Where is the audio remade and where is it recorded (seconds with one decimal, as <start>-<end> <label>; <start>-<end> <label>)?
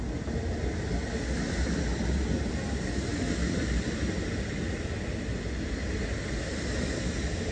0.0-7.5 recorded